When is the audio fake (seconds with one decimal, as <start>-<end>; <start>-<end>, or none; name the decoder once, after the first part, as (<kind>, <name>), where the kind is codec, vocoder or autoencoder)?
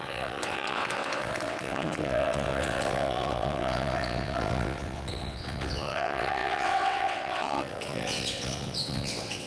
0.0-9.5 (vocoder, WaveNeXt)